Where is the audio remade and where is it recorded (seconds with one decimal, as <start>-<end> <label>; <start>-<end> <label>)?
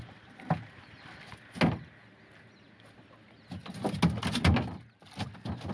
0.0-5.7 recorded